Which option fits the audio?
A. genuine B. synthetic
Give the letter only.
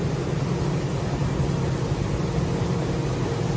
A